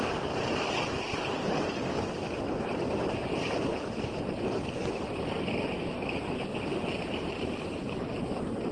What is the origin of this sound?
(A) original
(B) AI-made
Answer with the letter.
A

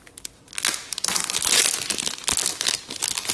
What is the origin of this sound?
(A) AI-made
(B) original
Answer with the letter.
B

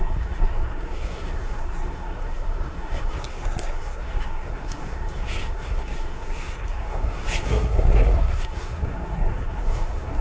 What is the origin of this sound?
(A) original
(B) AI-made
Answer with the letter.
B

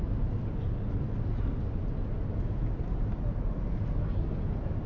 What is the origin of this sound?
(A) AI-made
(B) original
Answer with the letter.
B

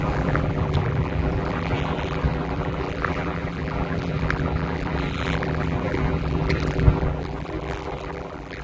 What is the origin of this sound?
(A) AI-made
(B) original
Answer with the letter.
A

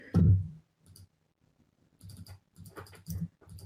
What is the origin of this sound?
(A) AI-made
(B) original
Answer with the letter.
A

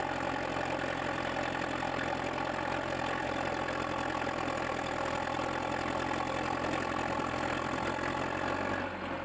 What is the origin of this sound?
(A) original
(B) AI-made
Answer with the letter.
A